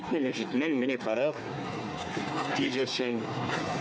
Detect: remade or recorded remade